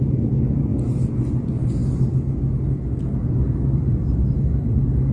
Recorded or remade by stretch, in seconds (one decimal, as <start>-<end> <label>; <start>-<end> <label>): 0.0-5.1 recorded